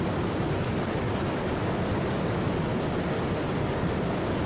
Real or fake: real